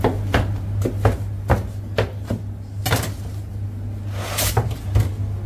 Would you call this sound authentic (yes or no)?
yes